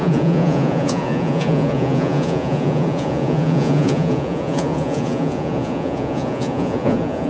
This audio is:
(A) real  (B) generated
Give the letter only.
B